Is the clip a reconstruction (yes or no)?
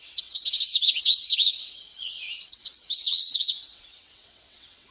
yes